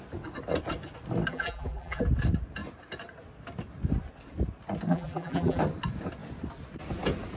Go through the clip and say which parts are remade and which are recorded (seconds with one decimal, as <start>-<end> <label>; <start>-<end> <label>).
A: 0.0-1.3 recorded; 1.3-2.0 remade; 2.0-4.9 recorded; 4.9-5.6 remade; 5.6-7.4 recorded